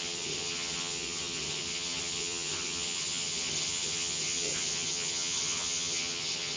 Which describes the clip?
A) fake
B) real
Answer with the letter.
A